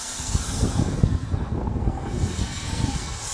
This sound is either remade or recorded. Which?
remade